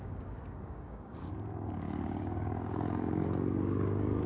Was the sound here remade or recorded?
remade